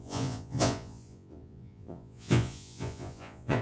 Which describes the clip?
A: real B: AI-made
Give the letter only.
B